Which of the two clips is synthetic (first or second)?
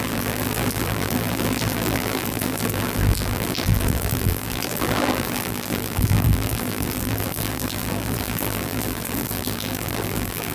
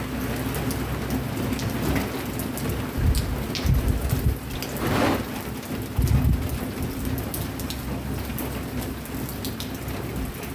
first